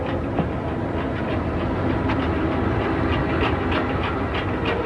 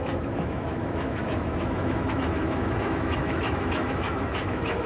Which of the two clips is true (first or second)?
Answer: first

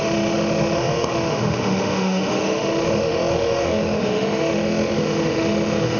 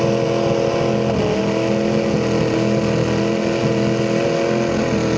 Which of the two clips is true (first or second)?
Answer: second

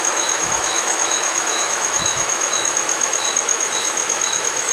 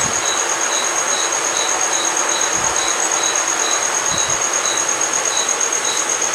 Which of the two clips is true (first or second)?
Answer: second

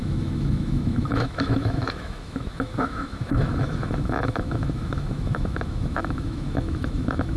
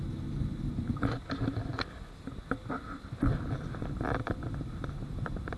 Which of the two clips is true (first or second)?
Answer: second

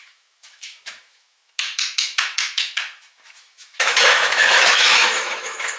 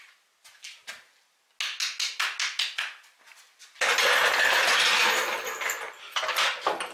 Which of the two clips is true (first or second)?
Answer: second